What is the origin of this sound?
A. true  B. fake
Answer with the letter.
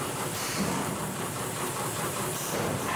B